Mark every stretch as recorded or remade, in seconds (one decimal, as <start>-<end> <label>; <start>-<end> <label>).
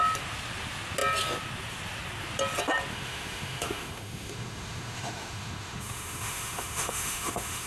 0.0-2.9 recorded; 2.9-7.7 remade